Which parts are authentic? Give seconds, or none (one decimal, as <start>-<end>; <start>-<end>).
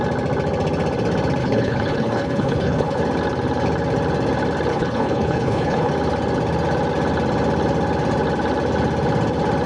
0.0-1.4; 3.0-4.7; 5.9-9.7